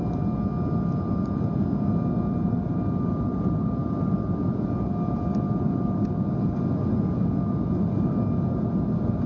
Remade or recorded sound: recorded